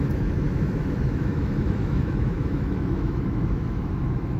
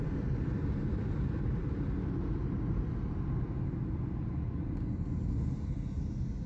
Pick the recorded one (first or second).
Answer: second